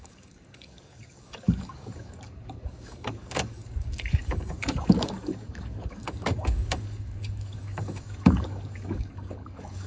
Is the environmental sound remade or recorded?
remade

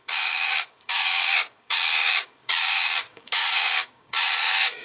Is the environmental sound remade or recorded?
remade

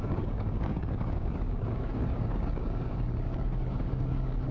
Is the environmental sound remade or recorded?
remade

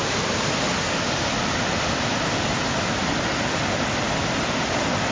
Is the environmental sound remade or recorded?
recorded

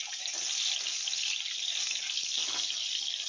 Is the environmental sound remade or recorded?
recorded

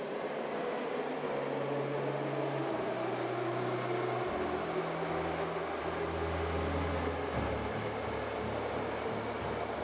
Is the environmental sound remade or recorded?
recorded